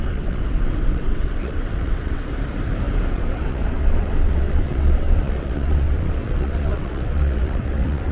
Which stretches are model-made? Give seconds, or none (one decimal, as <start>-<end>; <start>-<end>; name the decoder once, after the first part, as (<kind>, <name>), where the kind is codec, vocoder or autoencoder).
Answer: 0.0-2.3 (vocoder, WaveNeXt); 3.1-8.1